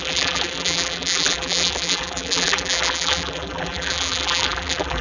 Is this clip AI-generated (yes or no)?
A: yes